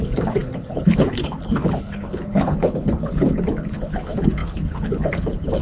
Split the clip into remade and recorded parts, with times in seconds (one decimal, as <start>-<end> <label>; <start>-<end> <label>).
0.0-5.6 remade